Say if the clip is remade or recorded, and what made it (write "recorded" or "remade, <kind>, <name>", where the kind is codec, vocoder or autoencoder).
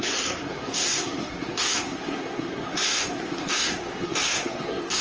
remade, codec, SNAC